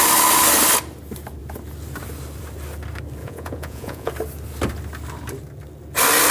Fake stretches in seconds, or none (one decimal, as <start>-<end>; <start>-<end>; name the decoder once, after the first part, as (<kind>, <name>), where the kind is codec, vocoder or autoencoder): 3.2-4.1 (vocoder, Vocos)